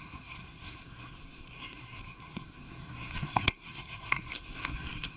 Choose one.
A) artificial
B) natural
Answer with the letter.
A